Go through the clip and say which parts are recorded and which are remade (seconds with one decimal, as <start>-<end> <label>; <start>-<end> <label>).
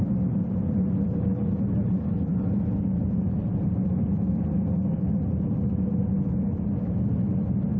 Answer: 0.0-7.8 recorded